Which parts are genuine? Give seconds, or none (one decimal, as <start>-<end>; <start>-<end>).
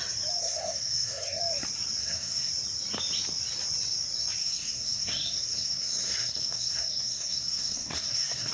0.0-0.4; 1.4-2.0; 2.5-4.4